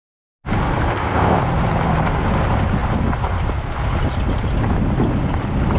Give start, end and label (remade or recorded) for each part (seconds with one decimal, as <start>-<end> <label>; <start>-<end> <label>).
0.0-0.9 recorded; 0.9-1.4 remade; 1.4-5.8 recorded